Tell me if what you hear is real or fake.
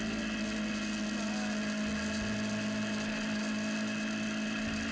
real